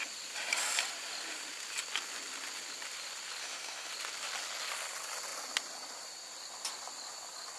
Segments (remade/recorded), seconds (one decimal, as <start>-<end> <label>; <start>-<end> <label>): 0.0-3.4 recorded; 3.4-3.9 remade; 3.9-7.6 recorded